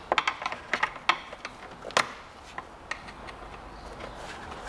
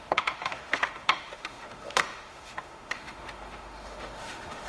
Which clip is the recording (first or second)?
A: first